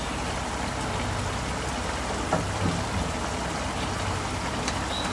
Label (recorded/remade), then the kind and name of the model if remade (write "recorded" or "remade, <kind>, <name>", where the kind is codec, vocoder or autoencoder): recorded